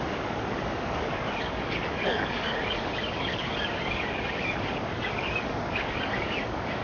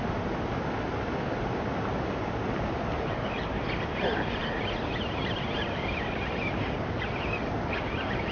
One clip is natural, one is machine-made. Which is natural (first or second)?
second